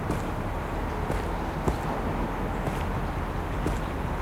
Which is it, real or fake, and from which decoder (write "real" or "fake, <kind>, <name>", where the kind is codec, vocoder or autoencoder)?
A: real